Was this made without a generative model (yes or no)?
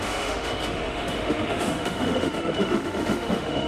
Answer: no